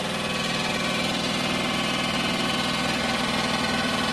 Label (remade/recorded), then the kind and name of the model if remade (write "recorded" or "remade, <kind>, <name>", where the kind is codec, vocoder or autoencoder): recorded